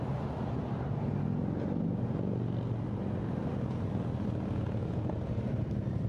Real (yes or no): yes